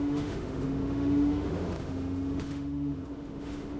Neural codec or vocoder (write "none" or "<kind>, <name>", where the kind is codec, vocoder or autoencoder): autoencoder, DAC-VAE